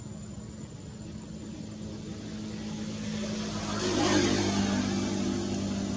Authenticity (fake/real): real